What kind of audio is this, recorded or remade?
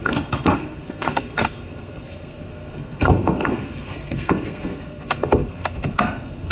remade